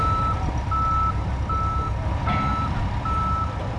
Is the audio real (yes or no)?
yes